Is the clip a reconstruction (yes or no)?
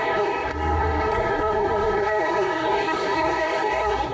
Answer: yes